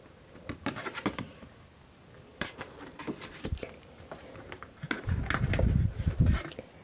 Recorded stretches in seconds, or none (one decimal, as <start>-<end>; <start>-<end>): 0.0-2.3; 5.2-6.8